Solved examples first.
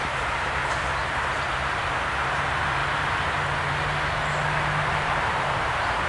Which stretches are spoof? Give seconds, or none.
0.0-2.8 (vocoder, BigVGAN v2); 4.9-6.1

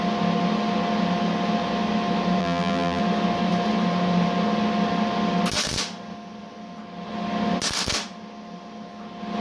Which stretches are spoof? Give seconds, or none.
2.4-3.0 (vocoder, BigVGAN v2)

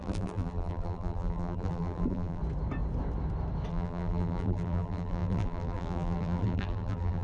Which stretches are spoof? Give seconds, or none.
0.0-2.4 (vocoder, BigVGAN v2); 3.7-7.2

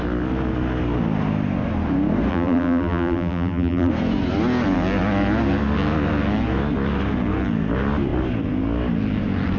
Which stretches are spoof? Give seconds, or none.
2.3-3.9 (vocoder, BigVGAN v2)

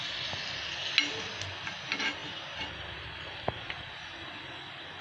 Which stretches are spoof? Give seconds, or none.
none

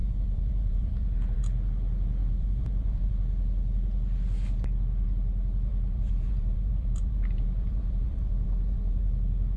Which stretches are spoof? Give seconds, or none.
0.0-1.4 (vocoder, BigVGAN v2); 2.2-3.1; 5.7-9.1

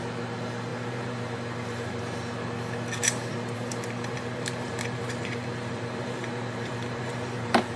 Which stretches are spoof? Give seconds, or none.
0.7-2.0 (vocoder, BigVGAN v2); 3.0-7.8

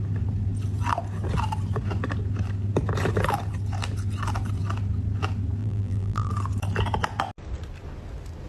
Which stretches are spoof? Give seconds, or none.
5.6-6.3 (vocoder, BigVGAN v2)